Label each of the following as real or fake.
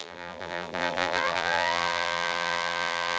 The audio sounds fake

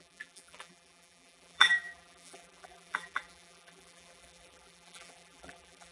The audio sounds fake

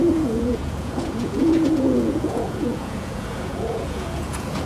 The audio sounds fake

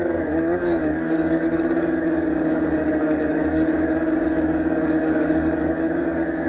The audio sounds fake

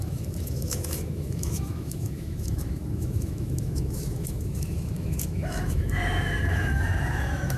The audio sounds fake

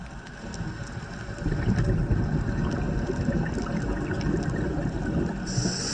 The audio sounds real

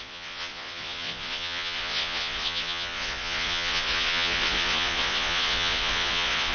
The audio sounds fake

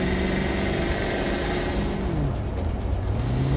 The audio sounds real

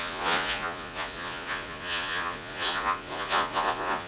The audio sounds fake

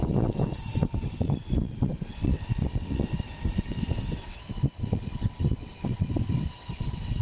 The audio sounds fake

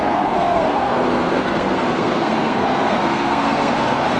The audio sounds fake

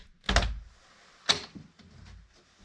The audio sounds real